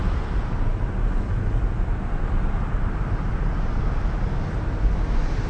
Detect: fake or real real